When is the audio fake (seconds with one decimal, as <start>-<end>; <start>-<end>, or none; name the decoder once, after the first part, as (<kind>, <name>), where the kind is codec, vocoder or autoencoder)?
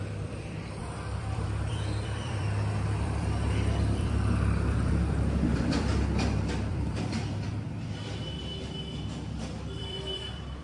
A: 0.0-5.9 (vocoder, BigVGAN v2); 6.7-8.8; 9.4-10.6